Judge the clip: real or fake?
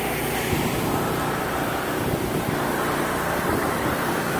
fake